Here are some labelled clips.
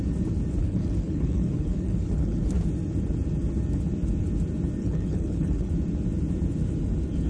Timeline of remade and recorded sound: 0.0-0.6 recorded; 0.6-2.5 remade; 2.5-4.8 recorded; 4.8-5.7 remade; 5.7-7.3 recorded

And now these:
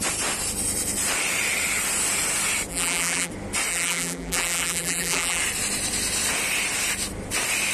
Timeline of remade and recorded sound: 0.0-2.7 recorded; 2.7-3.3 remade; 3.3-3.7 recorded; 3.7-5.4 remade; 5.4-7.7 recorded

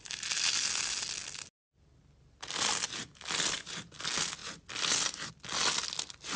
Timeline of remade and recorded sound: 0.0-6.4 recorded

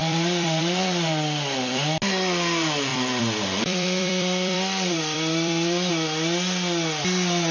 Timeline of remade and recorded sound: 0.0-2.0 remade; 2.0-2.9 recorded; 2.9-5.9 remade; 5.9-7.5 recorded

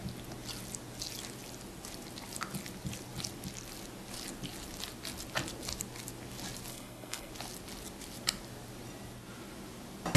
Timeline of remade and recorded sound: 0.0-6.7 recorded; 6.7-7.3 remade; 7.3-10.2 recorded

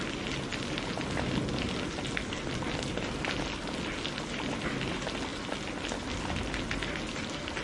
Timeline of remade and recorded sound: 0.0-7.6 recorded

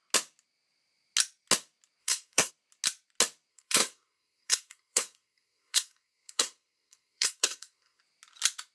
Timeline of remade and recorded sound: 0.0-2.0 recorded; 2.0-2.5 remade; 2.5-3.5 recorded; 3.5-8.0 remade; 8.0-8.7 recorded

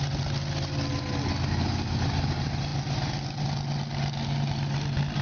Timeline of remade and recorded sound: 0.0-5.2 recorded